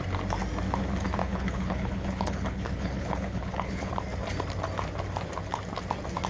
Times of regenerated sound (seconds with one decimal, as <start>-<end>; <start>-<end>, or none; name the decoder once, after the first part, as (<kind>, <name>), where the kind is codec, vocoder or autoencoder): 1.2-3.9 (codec, HILCodec)